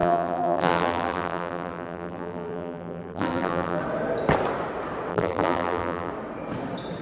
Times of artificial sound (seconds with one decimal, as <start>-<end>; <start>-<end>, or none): 0.0-3.8; 5.1-6.1